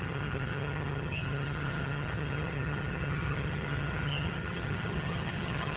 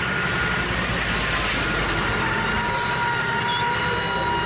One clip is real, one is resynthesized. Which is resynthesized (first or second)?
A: first